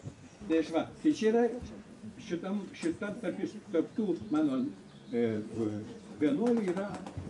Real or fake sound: fake